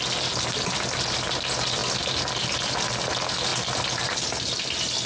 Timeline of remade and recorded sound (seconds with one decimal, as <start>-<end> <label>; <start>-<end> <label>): 0.0-5.1 recorded